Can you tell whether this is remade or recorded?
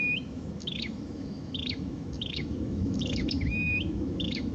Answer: remade